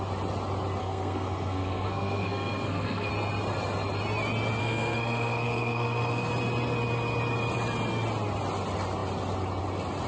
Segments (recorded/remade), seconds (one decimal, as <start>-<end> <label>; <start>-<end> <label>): 0.0-0.8 recorded; 0.8-3.1 remade; 3.1-4.6 recorded; 4.6-6.3 remade; 6.3-10.1 recorded